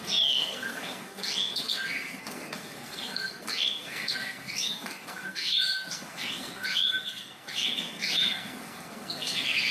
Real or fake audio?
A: fake